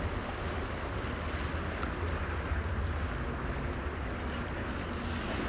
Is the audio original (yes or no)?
yes